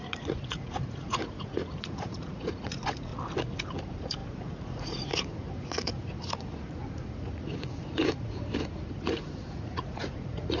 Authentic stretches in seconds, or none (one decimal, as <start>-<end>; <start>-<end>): 3.1-3.8